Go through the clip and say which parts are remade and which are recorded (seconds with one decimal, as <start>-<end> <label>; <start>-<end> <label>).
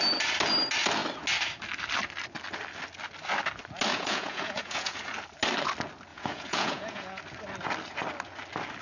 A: 0.0-3.9 recorded; 3.9-5.0 remade; 5.0-6.1 recorded; 6.1-7.2 remade; 7.2-8.8 recorded